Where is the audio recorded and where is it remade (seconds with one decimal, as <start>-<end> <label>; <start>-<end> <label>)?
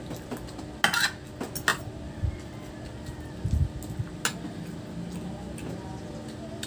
0.0-6.7 recorded